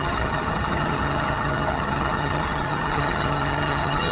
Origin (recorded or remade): remade